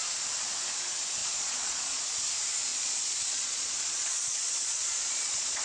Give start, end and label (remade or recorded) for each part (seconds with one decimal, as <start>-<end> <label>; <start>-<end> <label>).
0.0-1.2 recorded; 1.2-2.0 remade; 2.0-2.7 recorded; 2.7-5.6 remade